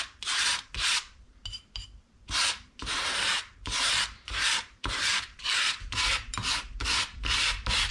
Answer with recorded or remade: remade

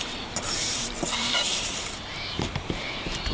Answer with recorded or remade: remade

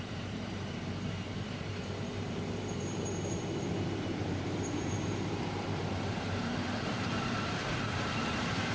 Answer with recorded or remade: remade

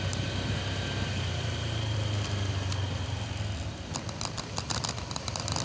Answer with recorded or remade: recorded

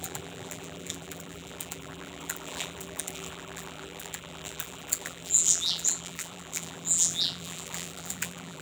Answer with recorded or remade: remade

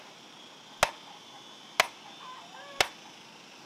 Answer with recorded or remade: recorded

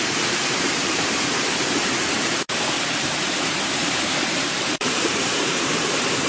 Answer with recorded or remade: remade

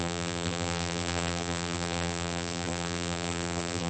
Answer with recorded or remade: remade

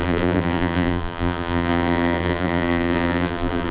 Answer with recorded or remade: remade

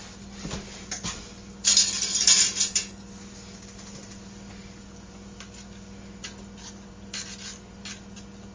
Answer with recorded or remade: recorded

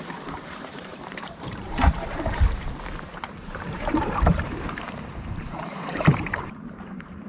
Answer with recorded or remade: remade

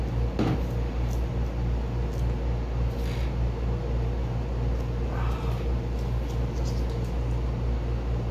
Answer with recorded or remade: recorded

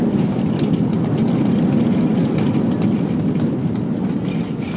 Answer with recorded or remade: recorded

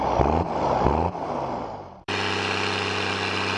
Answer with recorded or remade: recorded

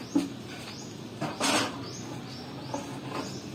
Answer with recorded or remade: recorded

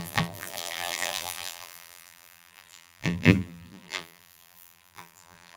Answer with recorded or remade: remade